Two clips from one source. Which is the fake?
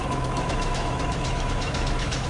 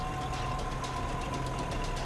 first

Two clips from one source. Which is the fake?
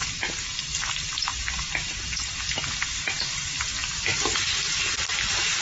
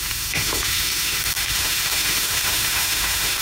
second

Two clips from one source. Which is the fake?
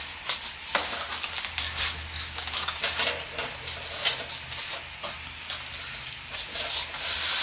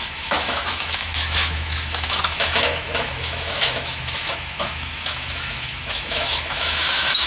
second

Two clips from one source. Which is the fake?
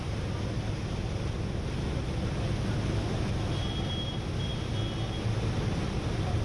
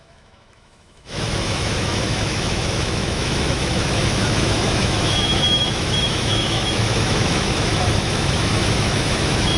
second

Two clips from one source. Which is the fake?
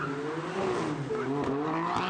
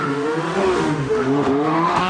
second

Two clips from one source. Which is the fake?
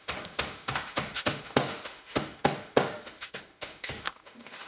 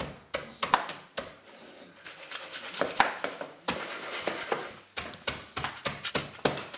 first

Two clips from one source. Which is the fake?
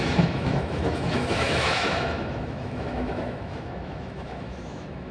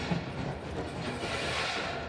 first